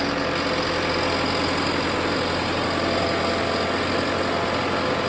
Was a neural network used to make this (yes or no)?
no